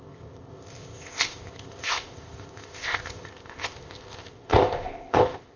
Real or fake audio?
fake